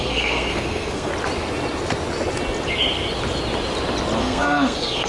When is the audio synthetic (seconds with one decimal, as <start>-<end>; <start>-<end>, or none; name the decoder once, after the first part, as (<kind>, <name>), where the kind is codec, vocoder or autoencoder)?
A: 0.0-1.1 (codec, SNAC); 4.2-5.1